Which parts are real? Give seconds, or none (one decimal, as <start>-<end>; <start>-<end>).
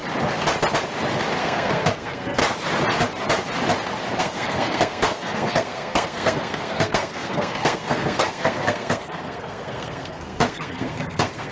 0.0-1.4; 2.4-4.2